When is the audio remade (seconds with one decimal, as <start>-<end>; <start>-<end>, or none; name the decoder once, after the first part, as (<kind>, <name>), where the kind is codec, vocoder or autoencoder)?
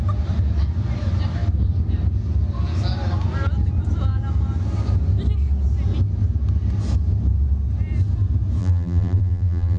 8.6-9.8 (vocoder, BigVGAN v2)